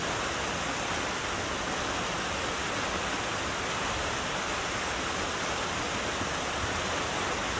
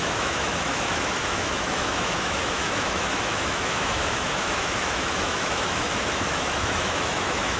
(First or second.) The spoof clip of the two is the second